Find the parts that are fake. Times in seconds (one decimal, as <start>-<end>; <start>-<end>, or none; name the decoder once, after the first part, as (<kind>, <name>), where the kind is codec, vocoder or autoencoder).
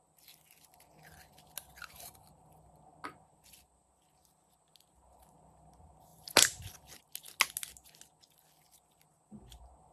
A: 6.1-7.0 (vocoder, BigVGAN v2)